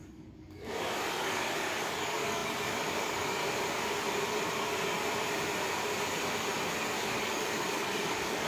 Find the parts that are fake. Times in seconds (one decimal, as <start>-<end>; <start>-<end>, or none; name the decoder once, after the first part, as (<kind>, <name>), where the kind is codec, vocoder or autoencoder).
0.0-3.4 (codec, DAC); 7.0-8.5